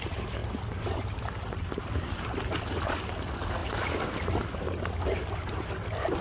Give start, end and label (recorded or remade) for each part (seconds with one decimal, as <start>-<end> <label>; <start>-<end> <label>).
0.0-0.4 recorded; 0.4-2.9 remade; 2.9-6.2 recorded